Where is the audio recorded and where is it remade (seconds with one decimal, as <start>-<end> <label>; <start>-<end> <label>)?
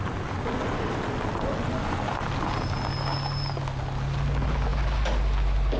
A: 0.0-5.8 recorded